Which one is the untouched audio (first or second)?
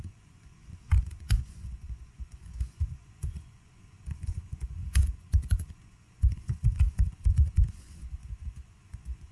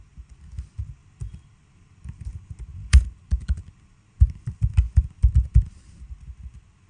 second